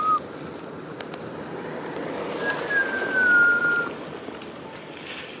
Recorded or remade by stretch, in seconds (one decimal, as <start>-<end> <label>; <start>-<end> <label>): 0.0-5.4 recorded